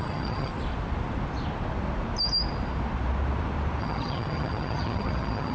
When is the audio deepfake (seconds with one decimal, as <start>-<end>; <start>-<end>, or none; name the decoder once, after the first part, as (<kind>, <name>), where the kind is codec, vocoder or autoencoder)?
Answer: 0.0-0.5 (vocoder, HiFi-GAN); 3.8-5.5

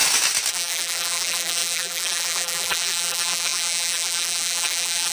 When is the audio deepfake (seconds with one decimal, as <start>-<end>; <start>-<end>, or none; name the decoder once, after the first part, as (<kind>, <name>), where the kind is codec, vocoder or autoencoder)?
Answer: 0.5-5.1 (vocoder, BigVGAN v2)